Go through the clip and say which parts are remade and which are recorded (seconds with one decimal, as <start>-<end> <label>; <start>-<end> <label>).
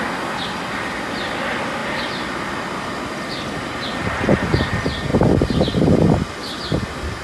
0.0-7.2 recorded